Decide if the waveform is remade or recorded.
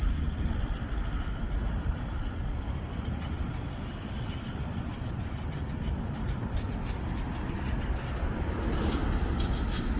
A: recorded